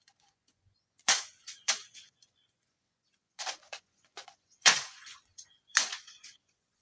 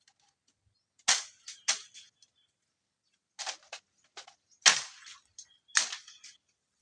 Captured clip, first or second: second